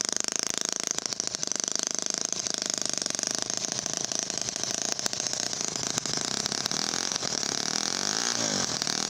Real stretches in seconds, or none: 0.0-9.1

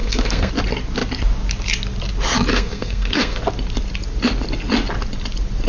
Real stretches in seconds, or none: 0.5-2.5; 3.4-5.7

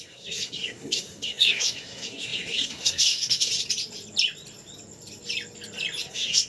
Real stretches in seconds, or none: 3.5-6.1

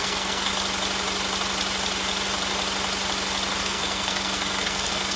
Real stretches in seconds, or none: 0.5-3.6

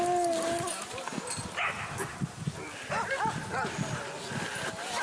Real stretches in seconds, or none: 0.0-5.0

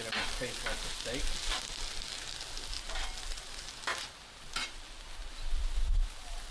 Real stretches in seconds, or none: 0.0-6.5

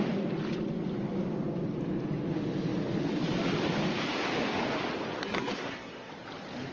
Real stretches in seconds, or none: 0.0-5.2; 6.1-6.7